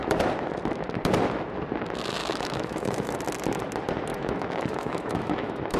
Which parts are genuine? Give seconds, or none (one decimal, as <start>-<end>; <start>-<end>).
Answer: 0.0-2.2; 3.1-4.1